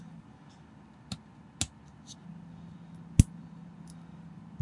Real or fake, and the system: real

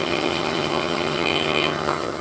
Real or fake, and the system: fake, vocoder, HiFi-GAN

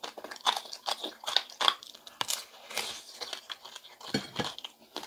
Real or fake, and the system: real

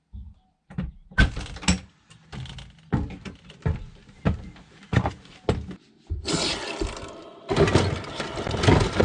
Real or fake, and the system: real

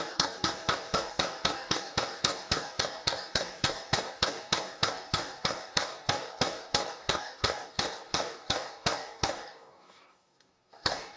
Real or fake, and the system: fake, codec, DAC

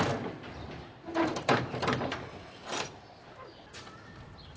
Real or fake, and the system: real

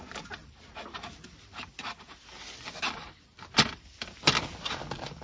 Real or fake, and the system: real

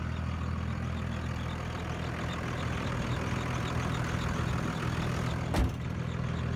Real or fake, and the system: real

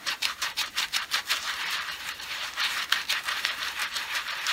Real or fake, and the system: fake, vocoder, BigVGAN v2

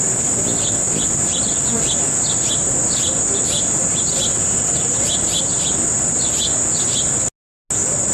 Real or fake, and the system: real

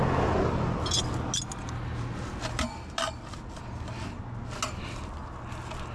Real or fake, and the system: real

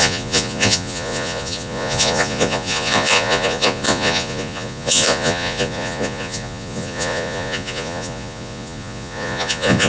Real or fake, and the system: fake, vocoder, Vocos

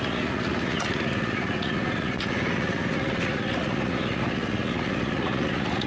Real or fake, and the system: fake, vocoder, Vocos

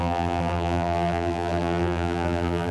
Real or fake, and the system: fake, vocoder, BigVGAN v2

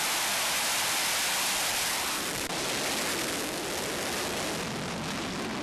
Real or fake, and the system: real